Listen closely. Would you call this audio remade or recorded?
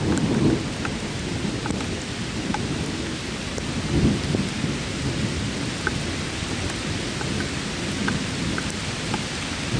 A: recorded